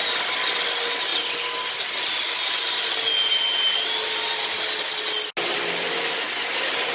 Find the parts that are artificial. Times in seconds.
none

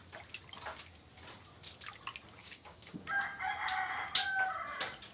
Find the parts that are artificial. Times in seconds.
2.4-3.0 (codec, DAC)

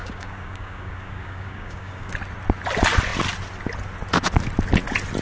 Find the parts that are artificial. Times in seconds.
0.0-2.1 (codec, DAC)

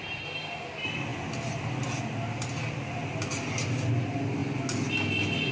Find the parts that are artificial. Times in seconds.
none

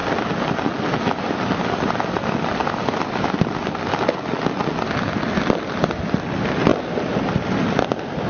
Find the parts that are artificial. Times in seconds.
none